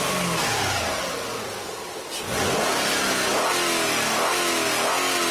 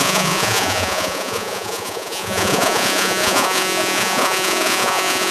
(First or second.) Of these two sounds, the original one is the first